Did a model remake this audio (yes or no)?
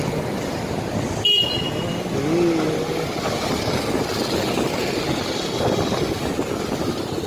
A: no